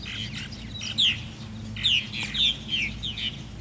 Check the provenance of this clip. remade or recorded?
recorded